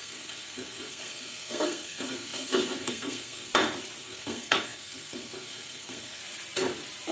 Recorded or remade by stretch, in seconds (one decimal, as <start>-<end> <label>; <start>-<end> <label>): 0.0-3.5 remade; 3.5-4.0 recorded; 4.0-6.2 remade; 6.2-7.1 recorded